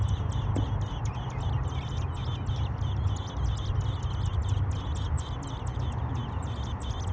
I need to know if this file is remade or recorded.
recorded